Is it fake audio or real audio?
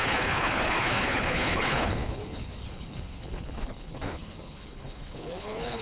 fake